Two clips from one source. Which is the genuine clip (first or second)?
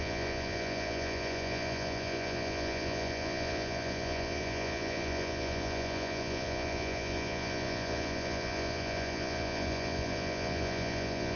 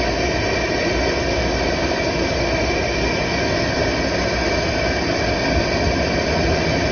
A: second